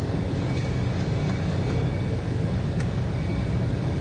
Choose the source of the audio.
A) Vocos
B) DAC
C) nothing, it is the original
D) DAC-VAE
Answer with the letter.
B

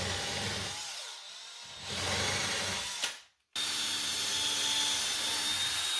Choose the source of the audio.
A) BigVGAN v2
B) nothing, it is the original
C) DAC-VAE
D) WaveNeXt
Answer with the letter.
B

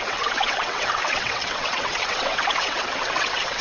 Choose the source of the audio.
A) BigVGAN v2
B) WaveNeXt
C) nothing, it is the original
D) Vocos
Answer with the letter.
B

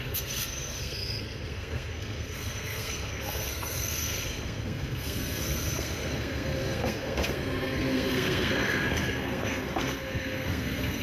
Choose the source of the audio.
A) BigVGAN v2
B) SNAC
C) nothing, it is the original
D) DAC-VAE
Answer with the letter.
B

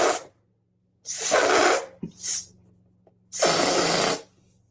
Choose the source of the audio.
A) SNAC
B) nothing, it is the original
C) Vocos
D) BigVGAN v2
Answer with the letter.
B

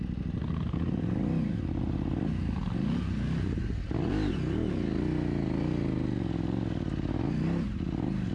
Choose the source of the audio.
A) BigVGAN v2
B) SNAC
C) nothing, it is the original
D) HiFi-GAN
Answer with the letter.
C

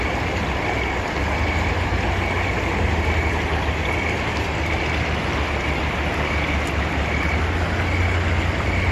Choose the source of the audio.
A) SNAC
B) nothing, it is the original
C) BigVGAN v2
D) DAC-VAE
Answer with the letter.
B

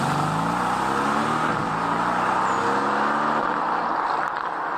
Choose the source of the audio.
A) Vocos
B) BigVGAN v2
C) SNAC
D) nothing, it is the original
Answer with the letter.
D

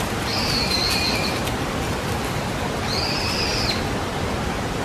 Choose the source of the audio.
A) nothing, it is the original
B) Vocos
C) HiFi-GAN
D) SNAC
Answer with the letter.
A